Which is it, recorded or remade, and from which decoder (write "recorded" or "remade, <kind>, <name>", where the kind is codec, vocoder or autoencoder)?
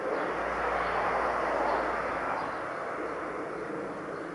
recorded